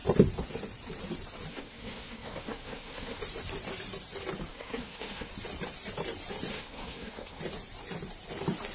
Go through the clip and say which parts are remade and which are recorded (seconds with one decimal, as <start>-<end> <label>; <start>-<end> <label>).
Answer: 0.0-1.5 recorded; 1.5-3.2 remade; 3.2-4.5 recorded; 4.5-5.3 remade; 5.3-6.5 recorded; 6.5-7.4 remade; 7.4-8.7 recorded